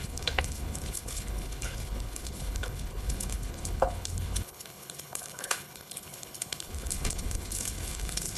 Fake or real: fake